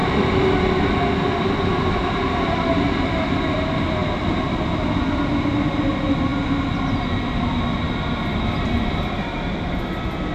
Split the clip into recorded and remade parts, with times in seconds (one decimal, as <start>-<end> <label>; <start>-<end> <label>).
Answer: 0.0-10.3 recorded